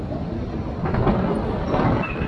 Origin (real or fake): real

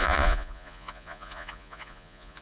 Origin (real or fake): fake